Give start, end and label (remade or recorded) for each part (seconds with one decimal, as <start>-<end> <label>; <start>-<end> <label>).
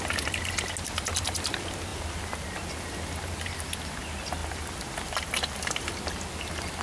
0.0-4.4 recorded; 4.4-5.9 remade; 5.9-6.8 recorded